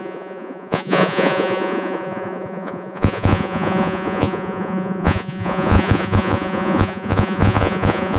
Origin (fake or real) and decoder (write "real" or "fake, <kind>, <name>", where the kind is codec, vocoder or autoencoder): fake, vocoder, Vocos